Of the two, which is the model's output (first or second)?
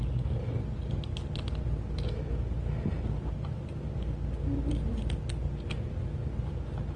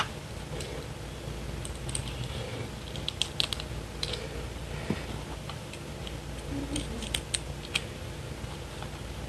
second